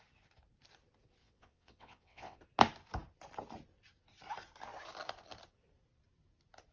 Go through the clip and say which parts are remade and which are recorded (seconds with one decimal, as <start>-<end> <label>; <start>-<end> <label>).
0.0-1.2 recorded; 1.2-2.4 remade; 2.4-6.7 recorded